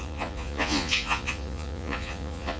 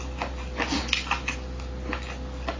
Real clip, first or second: second